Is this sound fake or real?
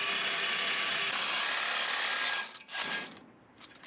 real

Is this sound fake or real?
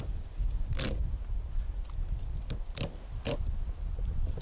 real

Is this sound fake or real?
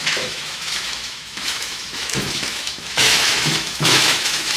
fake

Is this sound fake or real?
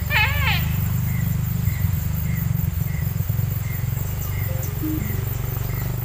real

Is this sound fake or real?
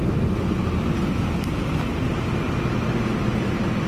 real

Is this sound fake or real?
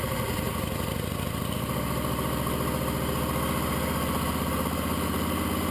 real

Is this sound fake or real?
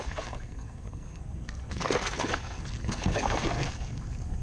fake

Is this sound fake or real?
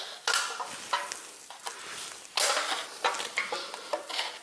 real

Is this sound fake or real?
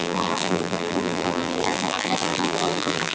fake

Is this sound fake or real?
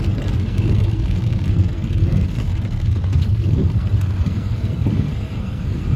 fake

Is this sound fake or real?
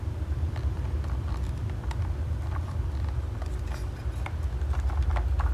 real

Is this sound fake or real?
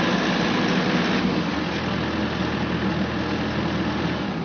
real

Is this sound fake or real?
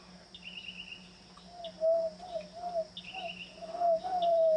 real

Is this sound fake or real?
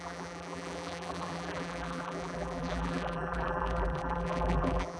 fake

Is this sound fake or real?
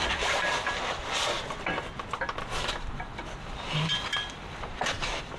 fake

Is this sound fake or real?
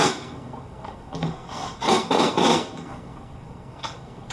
fake